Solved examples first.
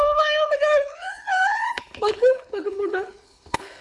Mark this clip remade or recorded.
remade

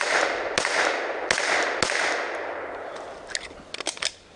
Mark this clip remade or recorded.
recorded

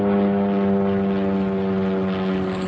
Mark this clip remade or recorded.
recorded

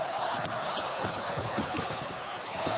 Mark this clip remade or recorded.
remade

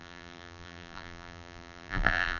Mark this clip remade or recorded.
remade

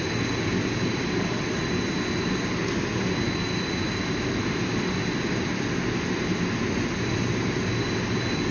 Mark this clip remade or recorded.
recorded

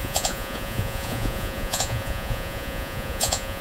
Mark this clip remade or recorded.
remade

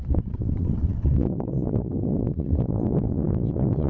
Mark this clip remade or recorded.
remade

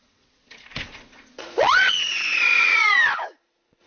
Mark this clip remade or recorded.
remade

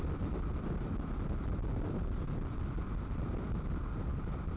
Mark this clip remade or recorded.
recorded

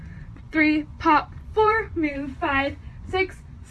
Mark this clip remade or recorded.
remade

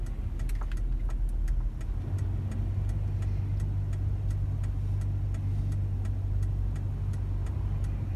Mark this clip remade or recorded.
recorded